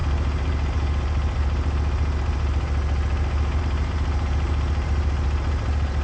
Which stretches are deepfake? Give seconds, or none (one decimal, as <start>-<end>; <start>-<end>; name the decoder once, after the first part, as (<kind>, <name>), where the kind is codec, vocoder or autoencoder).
3.6-6.0 (vocoder, BigVGAN v2)